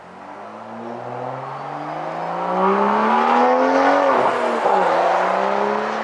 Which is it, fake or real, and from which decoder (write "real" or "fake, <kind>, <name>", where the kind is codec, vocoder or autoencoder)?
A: real